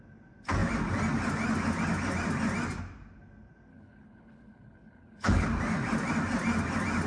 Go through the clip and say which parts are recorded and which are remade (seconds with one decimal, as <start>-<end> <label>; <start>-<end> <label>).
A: 0.0-3.7 recorded; 3.7-5.6 remade; 5.6-7.1 recorded